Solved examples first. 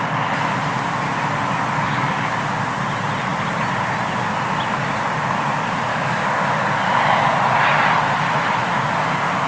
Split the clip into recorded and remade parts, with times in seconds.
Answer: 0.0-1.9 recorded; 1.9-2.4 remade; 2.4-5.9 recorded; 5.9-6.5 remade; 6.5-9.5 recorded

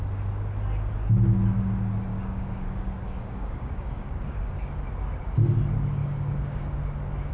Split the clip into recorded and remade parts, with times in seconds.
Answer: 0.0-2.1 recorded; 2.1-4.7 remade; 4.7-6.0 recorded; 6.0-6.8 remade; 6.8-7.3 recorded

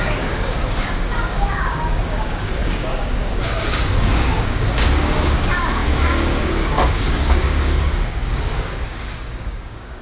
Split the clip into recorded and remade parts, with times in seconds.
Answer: 0.0-10.0 remade

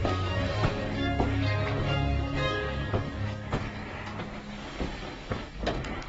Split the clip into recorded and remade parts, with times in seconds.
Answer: 0.0-3.8 remade; 3.8-4.5 recorded; 4.5-6.1 remade

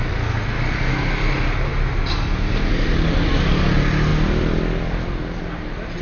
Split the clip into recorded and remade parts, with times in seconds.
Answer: 0.0-6.0 recorded

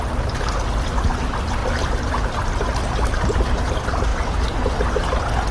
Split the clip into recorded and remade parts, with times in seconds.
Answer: 0.0-5.5 recorded

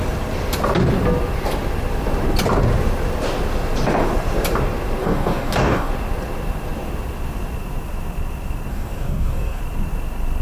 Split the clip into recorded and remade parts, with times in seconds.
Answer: 0.0-5.0 recorded; 5.0-5.9 remade; 5.9-8.7 recorded; 8.7-9.6 remade; 9.6-10.4 recorded

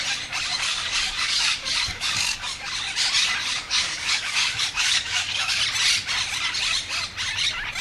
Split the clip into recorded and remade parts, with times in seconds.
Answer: 0.0-0.5 recorded; 0.5-2.6 remade; 2.6-3.4 recorded; 3.4-5.6 remade; 5.6-7.8 recorded